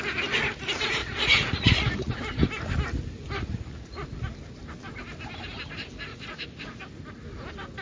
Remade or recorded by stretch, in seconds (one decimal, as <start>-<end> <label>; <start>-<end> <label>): 0.0-1.0 recorded; 1.0-2.1 remade; 2.1-3.4 recorded; 3.4-4.2 remade; 4.2-6.1 recorded; 6.1-6.8 remade; 6.8-7.8 recorded